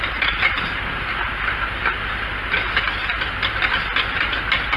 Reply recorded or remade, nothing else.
recorded